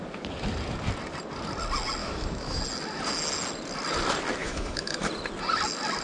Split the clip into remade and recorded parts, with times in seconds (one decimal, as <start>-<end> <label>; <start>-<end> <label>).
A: 0.0-2.0 recorded; 2.0-2.6 remade; 2.6-4.4 recorded; 4.4-5.1 remade; 5.1-6.0 recorded